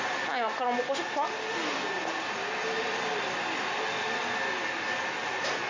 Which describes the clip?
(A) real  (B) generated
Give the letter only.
A